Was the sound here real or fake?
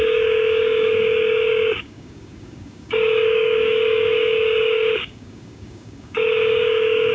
fake